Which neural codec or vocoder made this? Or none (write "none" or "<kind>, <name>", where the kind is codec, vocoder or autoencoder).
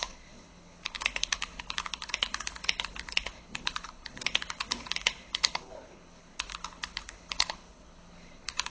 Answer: codec, HILCodec